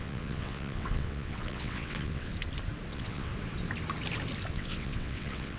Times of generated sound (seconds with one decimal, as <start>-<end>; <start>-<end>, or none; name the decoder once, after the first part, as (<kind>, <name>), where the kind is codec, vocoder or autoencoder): 0.0-2.3 (vocoder, WaveNeXt); 2.9-3.3; 4.5-5.6